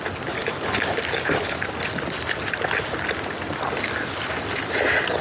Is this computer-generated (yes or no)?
no